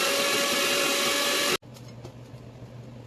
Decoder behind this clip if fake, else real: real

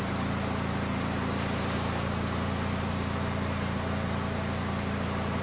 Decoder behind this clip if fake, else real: fake, vocoder, BigVGAN v2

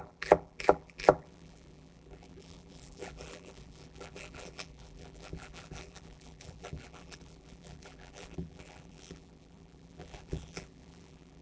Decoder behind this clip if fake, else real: fake, vocoder, BigVGAN v2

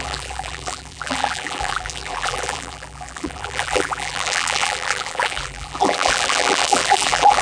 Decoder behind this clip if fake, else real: fake, vocoder, BigVGAN v2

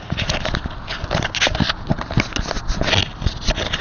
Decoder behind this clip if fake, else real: real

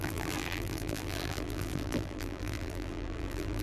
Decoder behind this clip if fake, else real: fake, vocoder, BigVGAN v2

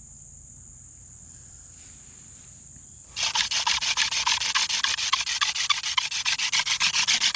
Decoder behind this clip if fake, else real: fake, vocoder, BigVGAN v2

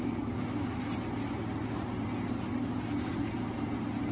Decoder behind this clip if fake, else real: real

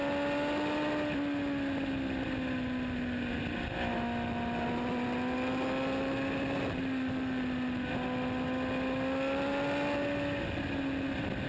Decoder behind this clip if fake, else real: real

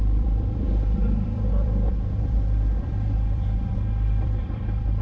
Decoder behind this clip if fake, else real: fake, vocoder, BigVGAN v2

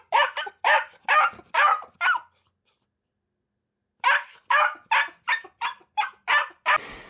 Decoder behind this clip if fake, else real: real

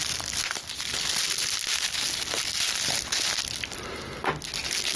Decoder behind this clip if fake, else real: real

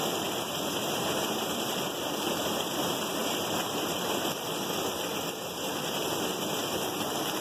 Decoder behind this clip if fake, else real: fake, vocoder, BigVGAN v2